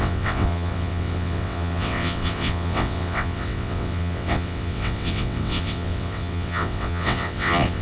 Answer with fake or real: fake